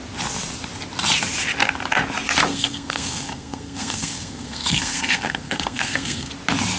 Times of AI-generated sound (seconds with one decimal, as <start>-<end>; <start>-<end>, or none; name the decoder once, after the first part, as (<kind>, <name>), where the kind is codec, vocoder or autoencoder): 2.5-6.3 (codec, SNAC)